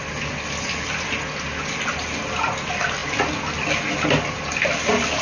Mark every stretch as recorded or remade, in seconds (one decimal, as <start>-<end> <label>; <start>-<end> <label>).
0.0-5.2 recorded